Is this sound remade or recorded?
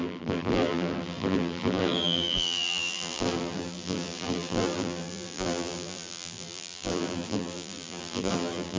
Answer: remade